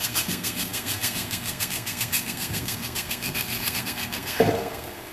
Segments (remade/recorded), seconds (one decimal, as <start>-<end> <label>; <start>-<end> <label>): 0.0-5.1 remade